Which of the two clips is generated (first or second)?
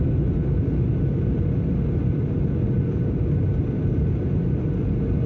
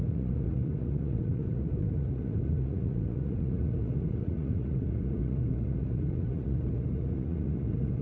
second